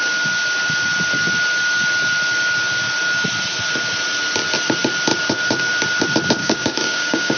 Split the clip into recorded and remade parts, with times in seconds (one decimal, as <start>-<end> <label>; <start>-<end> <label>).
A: 0.0-6.4 recorded; 6.4-7.4 remade